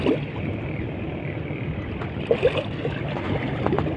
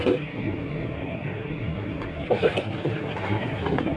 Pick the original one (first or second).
first